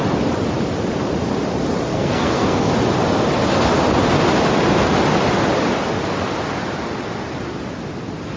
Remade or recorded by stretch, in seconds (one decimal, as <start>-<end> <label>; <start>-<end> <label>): 0.0-1.9 recorded; 1.9-2.7 remade; 2.7-8.4 recorded